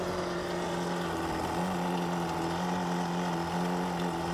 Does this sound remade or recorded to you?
recorded